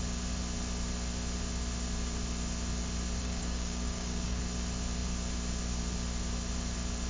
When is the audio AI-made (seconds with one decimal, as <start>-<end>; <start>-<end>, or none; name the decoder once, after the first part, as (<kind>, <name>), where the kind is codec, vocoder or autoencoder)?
3.2-4.4 (codec, DAC)